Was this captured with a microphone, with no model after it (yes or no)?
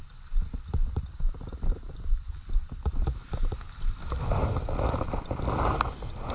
yes